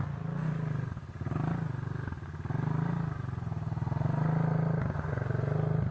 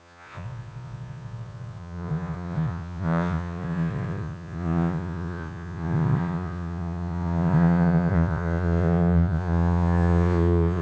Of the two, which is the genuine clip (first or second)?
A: first